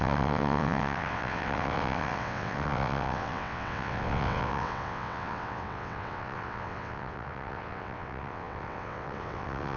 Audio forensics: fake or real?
fake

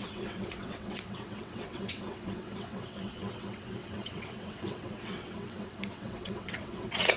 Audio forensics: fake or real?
fake